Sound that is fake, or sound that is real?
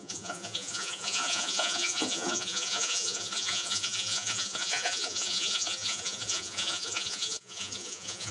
fake